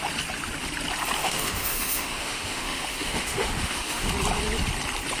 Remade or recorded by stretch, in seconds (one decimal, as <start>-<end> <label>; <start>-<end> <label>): 0.0-1.2 recorded; 1.2-4.1 remade; 4.1-5.2 recorded